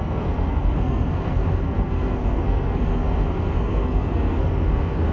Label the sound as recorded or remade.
remade